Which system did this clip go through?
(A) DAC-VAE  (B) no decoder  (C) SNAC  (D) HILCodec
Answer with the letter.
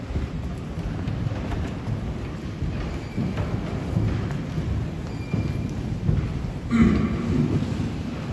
B